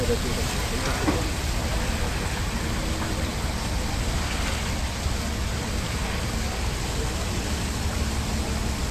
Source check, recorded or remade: recorded